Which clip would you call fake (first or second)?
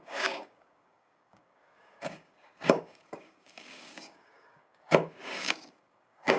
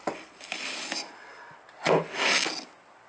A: first